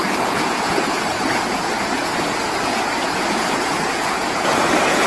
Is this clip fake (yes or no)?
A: yes